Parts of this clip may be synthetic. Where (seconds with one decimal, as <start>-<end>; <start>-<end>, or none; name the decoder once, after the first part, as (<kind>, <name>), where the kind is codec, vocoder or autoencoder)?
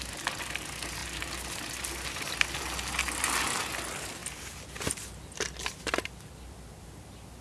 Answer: none